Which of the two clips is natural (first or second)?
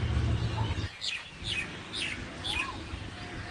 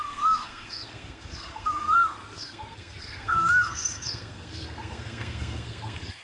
first